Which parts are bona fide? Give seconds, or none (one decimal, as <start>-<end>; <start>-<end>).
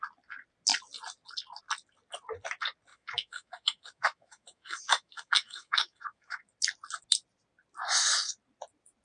0.0-2.9; 6.4-9.0